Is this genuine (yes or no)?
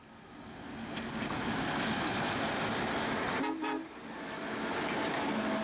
yes